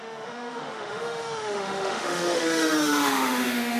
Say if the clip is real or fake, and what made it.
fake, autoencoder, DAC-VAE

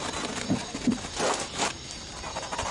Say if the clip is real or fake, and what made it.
real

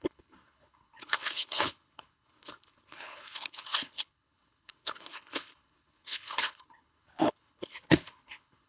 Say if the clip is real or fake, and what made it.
fake, codec, HILCodec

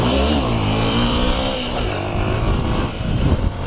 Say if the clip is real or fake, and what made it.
fake, vocoder, BigVGAN v2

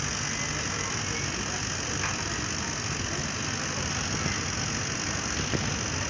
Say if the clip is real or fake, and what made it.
real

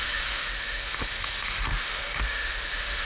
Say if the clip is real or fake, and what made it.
fake, autoencoder, DAC-VAE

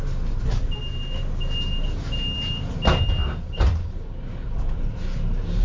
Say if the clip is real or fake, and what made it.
real